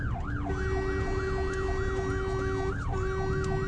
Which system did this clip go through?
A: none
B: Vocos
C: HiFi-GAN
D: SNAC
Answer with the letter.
A